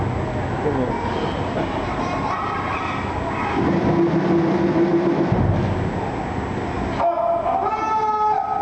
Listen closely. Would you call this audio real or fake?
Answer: real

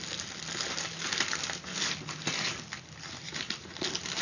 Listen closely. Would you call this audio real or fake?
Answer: real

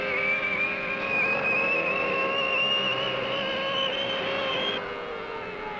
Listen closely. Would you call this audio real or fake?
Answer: real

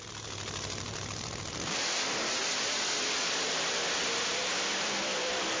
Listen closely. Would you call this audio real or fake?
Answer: fake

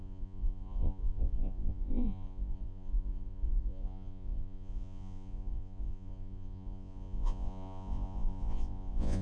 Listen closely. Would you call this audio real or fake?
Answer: fake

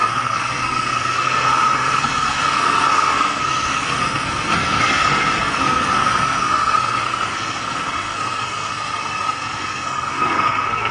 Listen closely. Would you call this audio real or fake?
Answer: fake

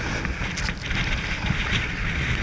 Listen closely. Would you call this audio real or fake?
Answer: real